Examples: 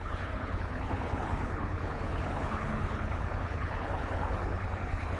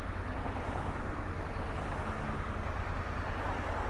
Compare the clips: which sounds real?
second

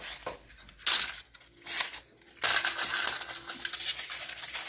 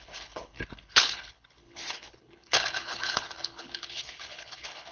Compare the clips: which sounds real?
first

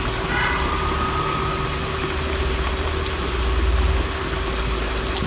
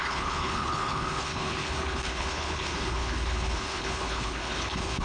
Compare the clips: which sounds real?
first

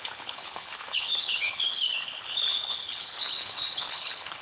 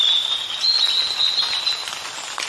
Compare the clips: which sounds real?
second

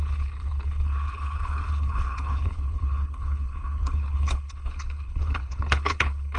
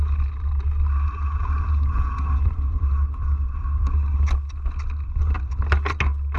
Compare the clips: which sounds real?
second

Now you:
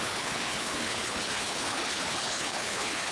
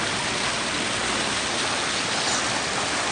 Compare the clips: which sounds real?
second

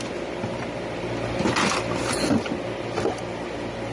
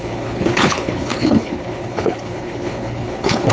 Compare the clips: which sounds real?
first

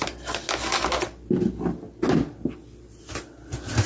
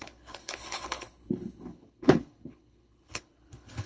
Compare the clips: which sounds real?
first